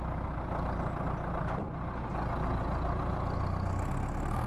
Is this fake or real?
real